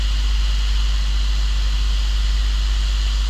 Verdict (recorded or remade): recorded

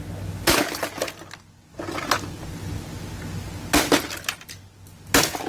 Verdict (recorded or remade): recorded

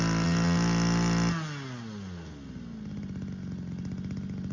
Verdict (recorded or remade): recorded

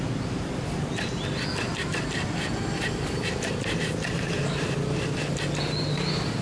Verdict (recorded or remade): recorded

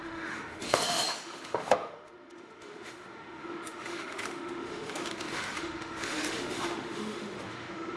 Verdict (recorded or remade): remade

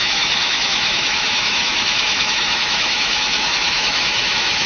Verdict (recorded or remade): remade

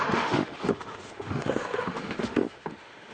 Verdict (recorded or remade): remade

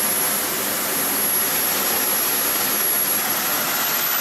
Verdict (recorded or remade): recorded